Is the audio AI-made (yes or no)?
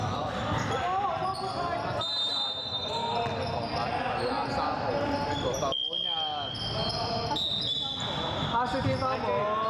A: no